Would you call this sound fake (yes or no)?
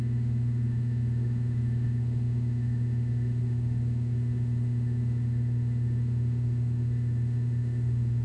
yes